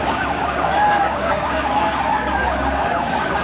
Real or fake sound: fake